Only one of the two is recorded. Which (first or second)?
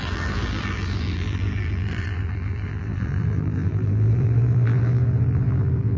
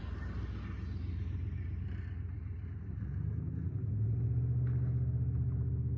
second